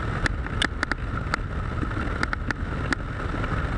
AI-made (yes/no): no